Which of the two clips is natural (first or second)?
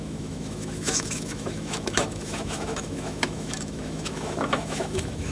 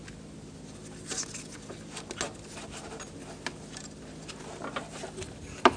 second